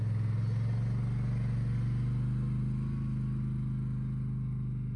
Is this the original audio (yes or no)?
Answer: yes